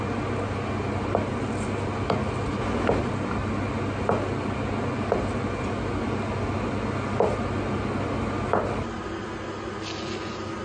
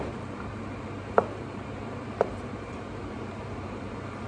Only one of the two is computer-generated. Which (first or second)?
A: second